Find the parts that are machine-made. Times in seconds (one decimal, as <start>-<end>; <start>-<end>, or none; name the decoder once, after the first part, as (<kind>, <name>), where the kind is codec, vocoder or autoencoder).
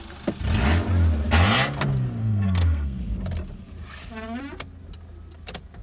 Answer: 2.2-3.0 (codec, SNAC)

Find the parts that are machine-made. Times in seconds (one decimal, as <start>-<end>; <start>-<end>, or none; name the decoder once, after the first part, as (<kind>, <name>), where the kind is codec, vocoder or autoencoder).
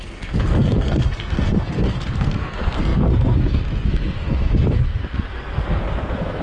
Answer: 0.0-6.4 (codec, SNAC)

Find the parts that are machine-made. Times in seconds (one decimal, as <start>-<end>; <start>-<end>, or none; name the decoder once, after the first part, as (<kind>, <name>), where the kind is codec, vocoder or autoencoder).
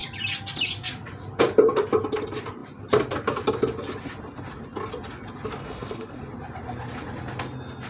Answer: 5.6-6.2 (codec, SNAC)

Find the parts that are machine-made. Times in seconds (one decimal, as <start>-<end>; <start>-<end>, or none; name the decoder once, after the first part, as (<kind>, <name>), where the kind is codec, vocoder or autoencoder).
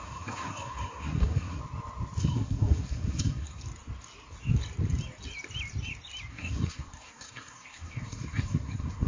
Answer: 0.0-1.6 (codec, SNAC); 2.2-3.6; 6.3-9.1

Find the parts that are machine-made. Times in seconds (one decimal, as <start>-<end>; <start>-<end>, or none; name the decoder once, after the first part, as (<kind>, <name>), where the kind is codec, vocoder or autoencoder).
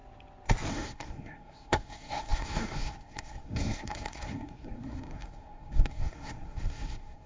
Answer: 0.7-7.3 (codec, SNAC)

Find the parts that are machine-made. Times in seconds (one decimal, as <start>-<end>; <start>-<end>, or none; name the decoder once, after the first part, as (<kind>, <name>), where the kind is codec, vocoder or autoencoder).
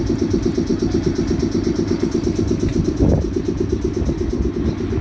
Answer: none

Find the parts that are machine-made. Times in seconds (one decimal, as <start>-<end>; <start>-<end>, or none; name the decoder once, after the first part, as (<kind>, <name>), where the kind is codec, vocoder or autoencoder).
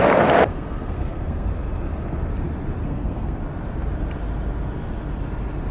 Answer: 0.5-1.5 (codec, SNAC); 2.8-3.4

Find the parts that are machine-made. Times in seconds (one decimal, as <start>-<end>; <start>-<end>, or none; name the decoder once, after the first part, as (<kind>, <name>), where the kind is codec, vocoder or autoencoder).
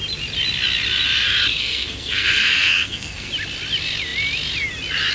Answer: 1.5-3.3 (codec, SNAC)